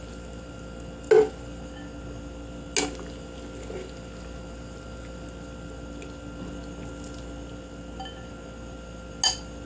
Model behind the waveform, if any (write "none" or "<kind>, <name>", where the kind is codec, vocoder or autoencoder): none